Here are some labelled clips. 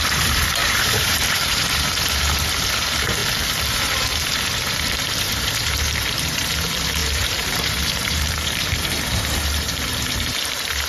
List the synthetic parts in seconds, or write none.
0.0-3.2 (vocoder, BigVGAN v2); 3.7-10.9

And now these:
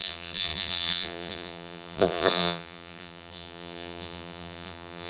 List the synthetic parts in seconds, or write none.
0.0-5.1 (vocoder, BigVGAN v2)

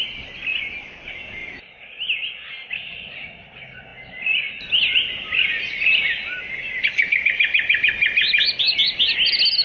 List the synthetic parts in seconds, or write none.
1.4-2.7 (vocoder, BigVGAN v2)

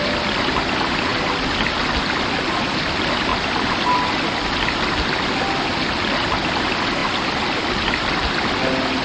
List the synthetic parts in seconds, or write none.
none

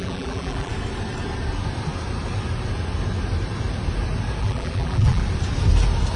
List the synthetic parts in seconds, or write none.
0.0-0.7 (vocoder, BigVGAN v2); 4.4-5.2